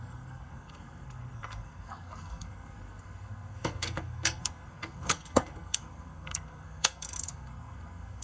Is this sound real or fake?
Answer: fake